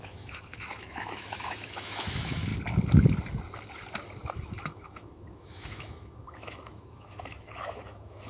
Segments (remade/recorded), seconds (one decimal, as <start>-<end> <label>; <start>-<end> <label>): 0.0-2.5 remade; 2.5-4.3 recorded; 4.3-8.3 remade